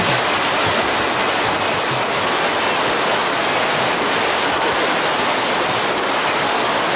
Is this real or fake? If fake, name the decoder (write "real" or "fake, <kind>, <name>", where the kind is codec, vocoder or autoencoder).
real